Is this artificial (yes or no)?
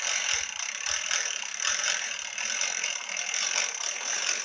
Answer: yes